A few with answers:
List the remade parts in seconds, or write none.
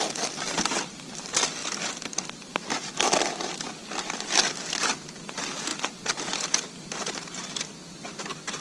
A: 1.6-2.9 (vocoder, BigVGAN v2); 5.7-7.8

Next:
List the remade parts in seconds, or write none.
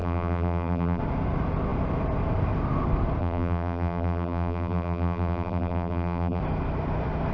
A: 0.0-1.0 (vocoder, BigVGAN v2); 3.2-6.4